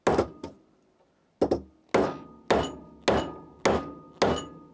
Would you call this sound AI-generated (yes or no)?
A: no